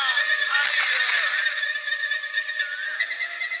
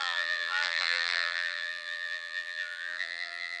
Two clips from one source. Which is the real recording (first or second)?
first